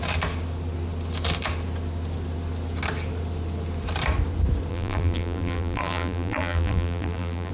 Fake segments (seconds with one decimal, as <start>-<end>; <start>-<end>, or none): 4.7-7.5